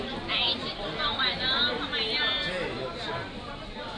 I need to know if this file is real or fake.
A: real